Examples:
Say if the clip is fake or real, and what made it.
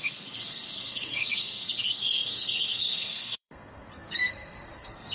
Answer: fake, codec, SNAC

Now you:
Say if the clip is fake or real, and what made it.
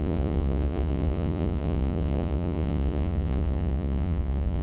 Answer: fake, vocoder, Vocos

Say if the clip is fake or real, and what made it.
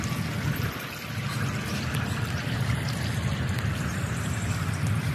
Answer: real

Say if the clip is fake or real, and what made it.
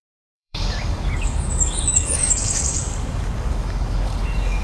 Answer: fake, codec, DAC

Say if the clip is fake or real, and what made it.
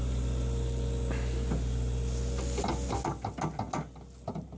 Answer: real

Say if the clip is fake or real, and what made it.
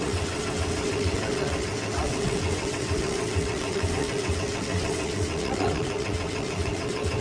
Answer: fake, vocoder, WaveNeXt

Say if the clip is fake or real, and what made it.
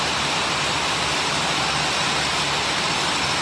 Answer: real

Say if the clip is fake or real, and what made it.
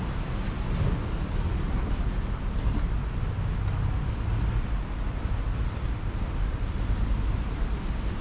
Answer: real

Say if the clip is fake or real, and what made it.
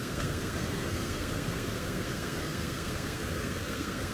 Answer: fake, codec, SNAC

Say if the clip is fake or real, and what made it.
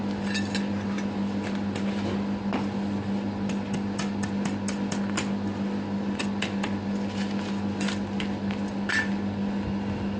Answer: real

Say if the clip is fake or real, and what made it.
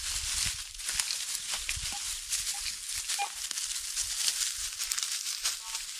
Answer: real